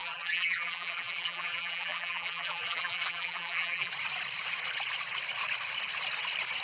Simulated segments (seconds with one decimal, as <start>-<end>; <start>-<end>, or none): 0.0-3.9